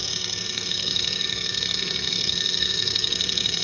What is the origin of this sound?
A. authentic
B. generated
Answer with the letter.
B